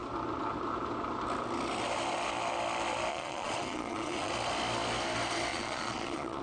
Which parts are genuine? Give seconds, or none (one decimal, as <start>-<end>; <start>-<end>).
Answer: 0.0-3.1; 4.3-5.5